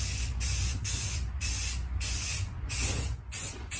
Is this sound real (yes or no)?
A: no